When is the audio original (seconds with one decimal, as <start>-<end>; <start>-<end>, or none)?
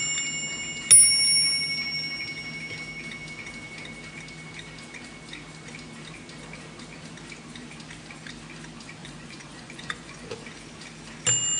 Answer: 0.0-9.0; 10.3-11.6